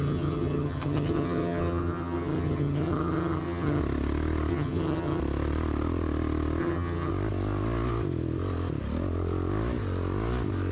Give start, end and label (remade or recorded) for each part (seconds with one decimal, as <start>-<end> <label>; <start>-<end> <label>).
0.0-3.8 remade; 3.8-4.5 recorded; 4.5-5.2 remade; 5.2-6.6 recorded; 6.6-7.1 remade; 7.1-10.7 recorded